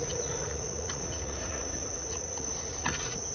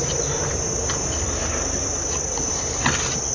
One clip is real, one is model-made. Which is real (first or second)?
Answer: second